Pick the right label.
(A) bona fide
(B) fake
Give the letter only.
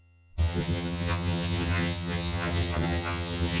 B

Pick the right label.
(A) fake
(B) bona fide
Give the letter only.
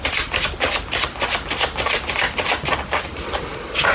B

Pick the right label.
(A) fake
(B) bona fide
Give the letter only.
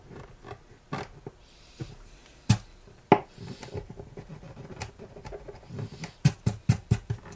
B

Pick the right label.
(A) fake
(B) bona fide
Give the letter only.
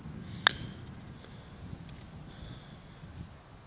B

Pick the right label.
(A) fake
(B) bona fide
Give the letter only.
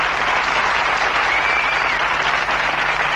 A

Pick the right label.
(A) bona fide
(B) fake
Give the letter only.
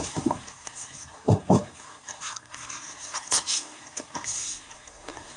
B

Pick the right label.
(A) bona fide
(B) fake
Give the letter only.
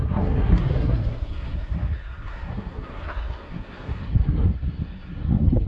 B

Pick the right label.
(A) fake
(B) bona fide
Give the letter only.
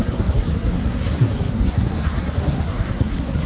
A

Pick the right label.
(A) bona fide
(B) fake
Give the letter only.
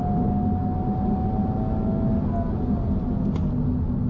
A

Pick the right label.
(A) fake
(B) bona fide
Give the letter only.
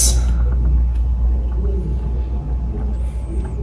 B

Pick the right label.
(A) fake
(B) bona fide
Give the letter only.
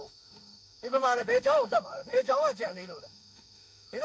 A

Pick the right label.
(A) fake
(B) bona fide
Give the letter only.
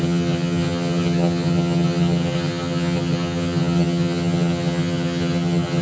A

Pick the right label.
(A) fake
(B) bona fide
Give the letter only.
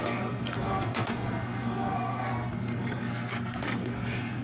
A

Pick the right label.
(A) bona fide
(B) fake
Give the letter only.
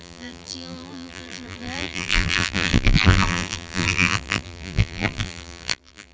B